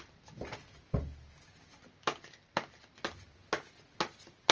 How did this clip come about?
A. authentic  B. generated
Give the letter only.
A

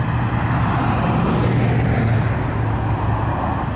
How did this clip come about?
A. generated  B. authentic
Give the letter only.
B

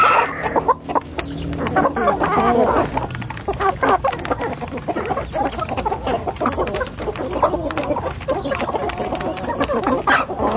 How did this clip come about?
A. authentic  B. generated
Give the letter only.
A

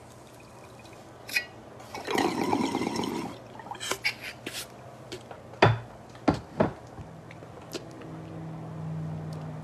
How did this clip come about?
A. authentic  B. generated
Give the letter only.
A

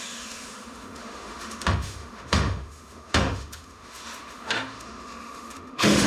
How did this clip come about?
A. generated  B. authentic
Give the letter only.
A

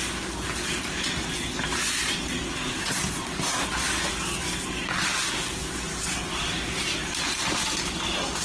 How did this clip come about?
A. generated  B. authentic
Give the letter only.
B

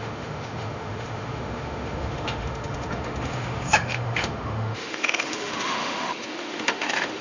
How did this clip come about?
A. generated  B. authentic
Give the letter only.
A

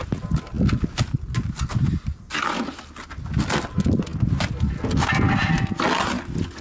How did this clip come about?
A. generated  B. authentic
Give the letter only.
B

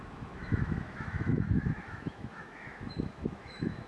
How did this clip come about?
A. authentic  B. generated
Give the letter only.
B